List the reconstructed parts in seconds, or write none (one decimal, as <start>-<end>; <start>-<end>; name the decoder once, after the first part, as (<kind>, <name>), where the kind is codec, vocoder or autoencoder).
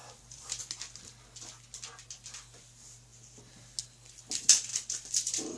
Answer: 0.0-0.6 (vocoder, BigVGAN v2); 4.7-5.6